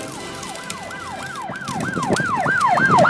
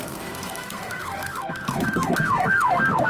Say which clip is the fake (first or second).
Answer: second